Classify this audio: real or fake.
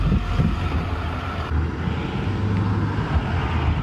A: real